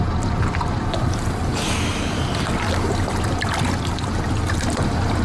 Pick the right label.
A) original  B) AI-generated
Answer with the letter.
A